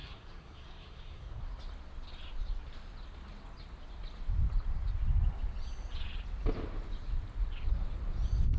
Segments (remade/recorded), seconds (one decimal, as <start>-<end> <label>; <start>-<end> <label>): 0.0-1.4 remade; 1.4-8.6 recorded